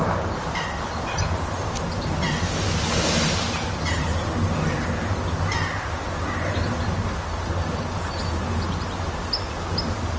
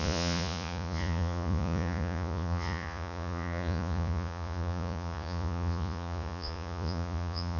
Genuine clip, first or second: first